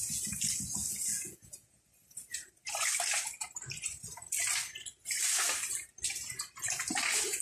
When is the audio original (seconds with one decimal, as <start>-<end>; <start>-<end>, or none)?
0.0-1.1; 1.8-7.4